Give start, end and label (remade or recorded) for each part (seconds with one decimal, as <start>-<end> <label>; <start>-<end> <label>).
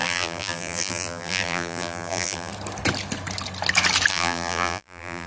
0.0-2.5 remade; 2.5-4.1 recorded; 4.1-5.3 remade